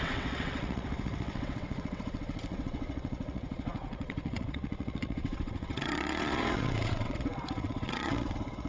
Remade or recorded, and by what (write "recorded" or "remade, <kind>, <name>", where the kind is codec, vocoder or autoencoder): remade, vocoder, WaveNeXt